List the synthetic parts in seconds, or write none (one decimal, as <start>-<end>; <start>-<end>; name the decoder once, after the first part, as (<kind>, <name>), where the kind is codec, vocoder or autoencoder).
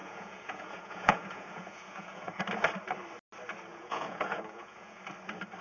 0.0-2.4 (vocoder, Vocos); 3.7-5.0